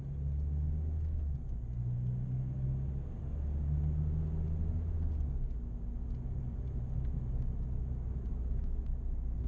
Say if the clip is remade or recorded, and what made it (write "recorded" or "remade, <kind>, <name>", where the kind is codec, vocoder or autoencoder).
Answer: recorded